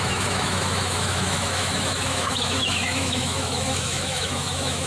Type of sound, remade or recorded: remade